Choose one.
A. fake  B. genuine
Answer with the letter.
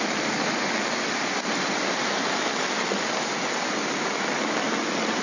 B